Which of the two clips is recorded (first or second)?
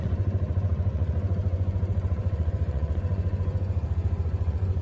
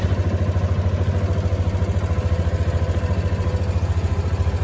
second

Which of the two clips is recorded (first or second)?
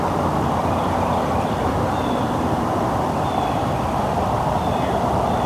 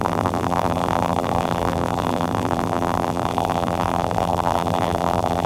first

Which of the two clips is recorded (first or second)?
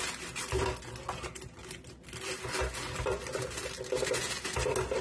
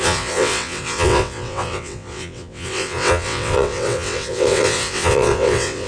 first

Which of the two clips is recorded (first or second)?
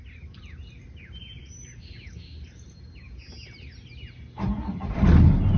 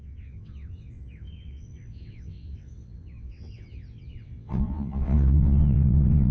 first